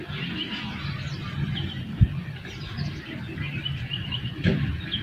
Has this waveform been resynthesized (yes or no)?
no